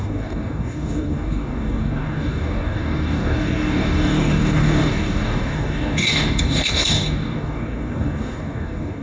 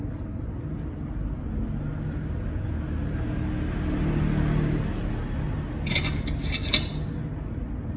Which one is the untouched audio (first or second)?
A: second